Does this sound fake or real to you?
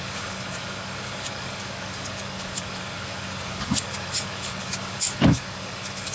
fake